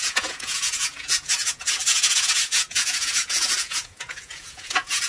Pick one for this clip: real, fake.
fake